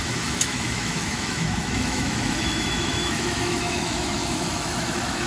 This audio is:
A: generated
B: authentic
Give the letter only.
A